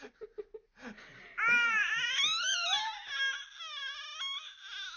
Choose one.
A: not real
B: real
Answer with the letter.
B